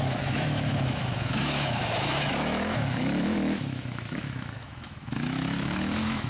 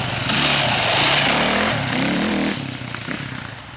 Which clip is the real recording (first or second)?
second